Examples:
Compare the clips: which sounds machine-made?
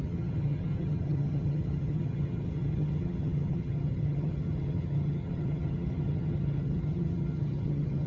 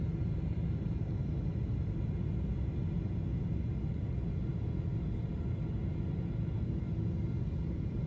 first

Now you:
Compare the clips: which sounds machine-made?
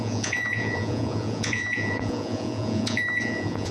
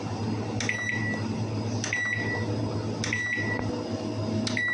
first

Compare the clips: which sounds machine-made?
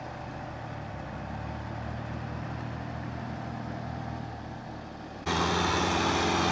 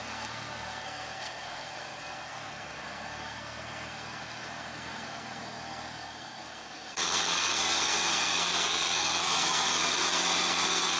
second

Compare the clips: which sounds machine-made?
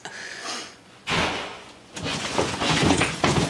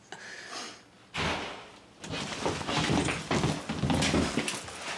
first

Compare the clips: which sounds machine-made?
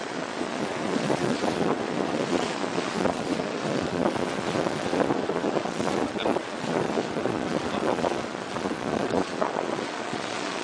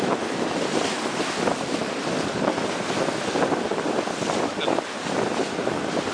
first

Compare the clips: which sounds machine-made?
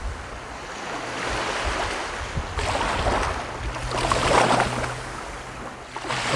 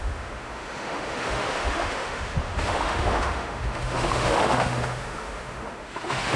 second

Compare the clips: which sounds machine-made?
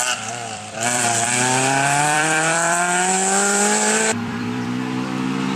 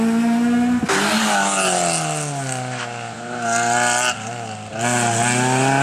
first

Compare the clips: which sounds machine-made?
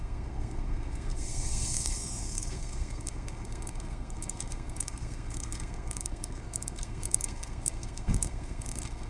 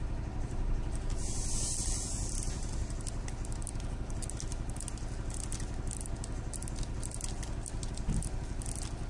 first